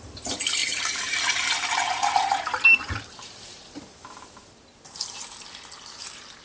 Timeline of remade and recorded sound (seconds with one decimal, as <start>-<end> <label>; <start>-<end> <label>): 0.0-0.6 recorded; 0.6-1.2 remade; 1.2-2.2 recorded; 2.2-3.6 remade; 3.6-6.4 recorded